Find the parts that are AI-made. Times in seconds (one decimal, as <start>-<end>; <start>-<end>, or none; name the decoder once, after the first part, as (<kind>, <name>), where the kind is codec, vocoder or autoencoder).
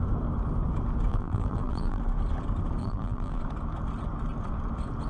1.1-2.0 (vocoder, BigVGAN v2); 2.8-3.4